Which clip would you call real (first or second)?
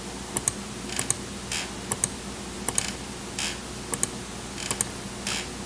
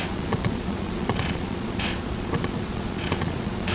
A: first